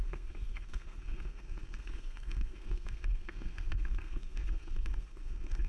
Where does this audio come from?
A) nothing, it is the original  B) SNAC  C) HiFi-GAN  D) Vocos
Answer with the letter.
B